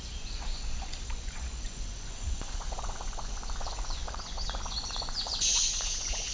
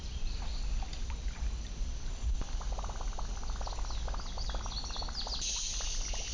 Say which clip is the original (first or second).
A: second